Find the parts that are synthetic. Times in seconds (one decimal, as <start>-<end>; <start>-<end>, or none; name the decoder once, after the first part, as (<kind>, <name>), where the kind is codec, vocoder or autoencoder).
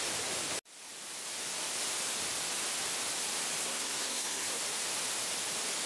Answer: 3.6-4.6 (codec, SNAC)